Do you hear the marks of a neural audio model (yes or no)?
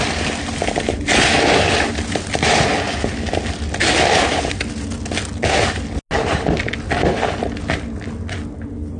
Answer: no